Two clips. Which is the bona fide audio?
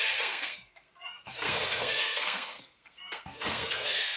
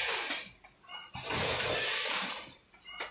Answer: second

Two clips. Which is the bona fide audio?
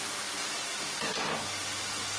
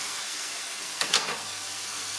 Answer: first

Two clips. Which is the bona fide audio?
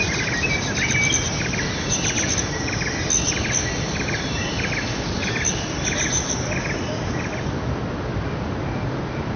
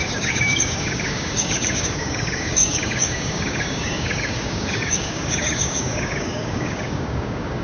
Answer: first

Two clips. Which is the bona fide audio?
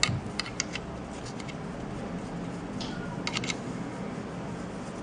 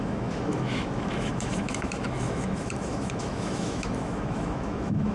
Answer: first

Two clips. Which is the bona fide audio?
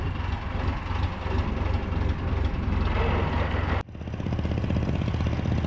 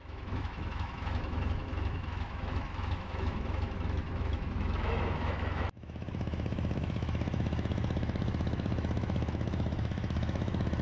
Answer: first